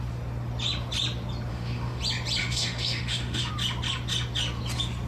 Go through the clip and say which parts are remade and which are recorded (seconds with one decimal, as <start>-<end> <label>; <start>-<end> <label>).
0.0-1.5 recorded; 1.5-2.0 remade; 2.0-2.4 recorded; 2.4-3.5 remade; 3.5-5.1 recorded